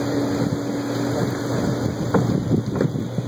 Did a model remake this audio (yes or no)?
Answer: no